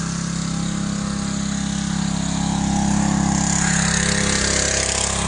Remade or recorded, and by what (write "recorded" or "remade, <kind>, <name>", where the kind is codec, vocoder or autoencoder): recorded